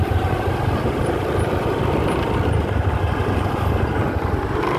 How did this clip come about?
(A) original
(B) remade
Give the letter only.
A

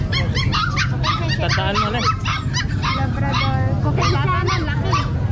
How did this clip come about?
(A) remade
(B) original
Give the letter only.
B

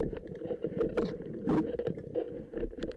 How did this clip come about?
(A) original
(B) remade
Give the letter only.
B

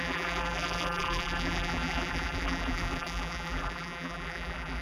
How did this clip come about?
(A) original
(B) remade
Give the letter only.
B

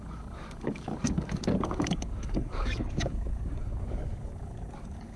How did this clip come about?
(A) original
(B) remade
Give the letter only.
B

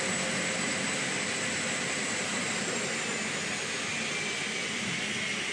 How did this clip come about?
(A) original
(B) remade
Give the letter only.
A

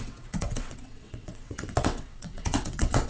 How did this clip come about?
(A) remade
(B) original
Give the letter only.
A